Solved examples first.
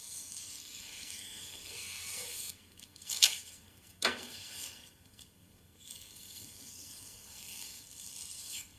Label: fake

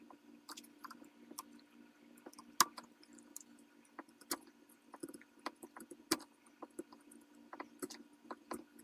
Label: real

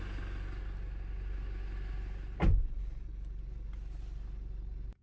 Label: real